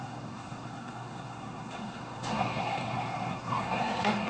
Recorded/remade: remade